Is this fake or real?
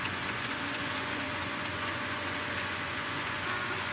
fake